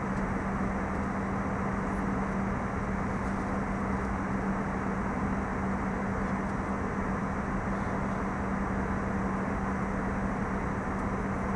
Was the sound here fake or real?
real